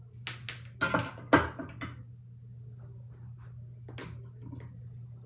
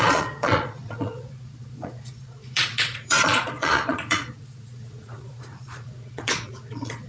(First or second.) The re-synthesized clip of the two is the second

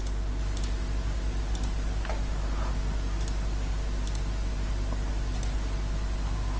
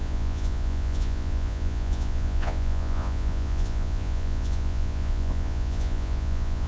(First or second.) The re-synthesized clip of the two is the second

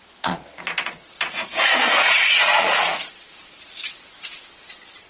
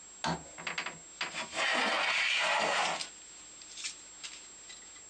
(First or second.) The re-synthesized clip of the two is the first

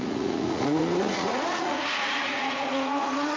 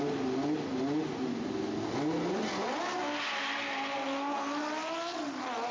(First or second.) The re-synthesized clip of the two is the first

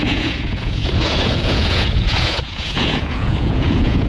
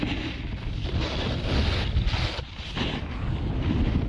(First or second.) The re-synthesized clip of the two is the first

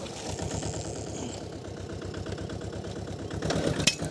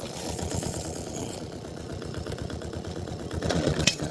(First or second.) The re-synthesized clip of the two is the second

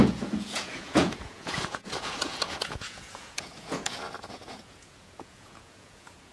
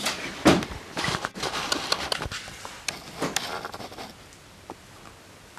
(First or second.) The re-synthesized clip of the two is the first